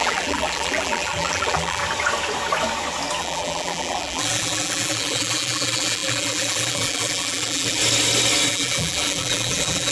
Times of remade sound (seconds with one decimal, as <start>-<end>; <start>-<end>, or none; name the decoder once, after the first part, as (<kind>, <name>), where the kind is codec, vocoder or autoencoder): 0.0-1.8 (vocoder, BigVGAN v2); 3.2-7.8; 8.5-9.9